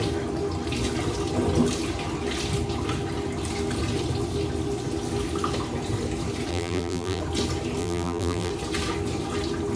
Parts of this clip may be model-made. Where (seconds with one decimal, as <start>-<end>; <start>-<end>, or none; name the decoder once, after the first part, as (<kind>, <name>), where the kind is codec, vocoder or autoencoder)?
6.5-7.2 (vocoder, BigVGAN v2); 7.8-8.5